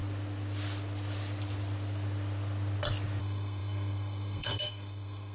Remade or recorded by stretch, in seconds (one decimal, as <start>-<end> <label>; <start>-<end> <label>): 0.0-3.2 recorded; 3.2-5.3 remade

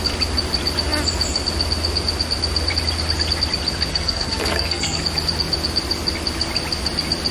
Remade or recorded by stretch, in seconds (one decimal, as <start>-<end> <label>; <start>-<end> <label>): 0.0-3.9 recorded; 3.9-5.0 remade; 5.0-7.3 recorded

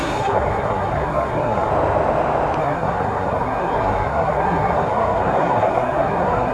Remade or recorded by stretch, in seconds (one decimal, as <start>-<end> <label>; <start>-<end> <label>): 0.0-1.7 remade; 1.7-2.6 recorded; 2.6-6.5 remade